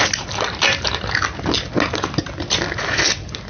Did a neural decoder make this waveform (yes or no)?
no